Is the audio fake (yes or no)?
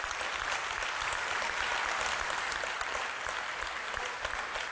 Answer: no